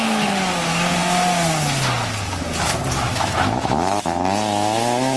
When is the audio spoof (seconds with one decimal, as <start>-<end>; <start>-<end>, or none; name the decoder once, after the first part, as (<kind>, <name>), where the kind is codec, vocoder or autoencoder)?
3.1-4.1 (autoencoder, DAC-VAE)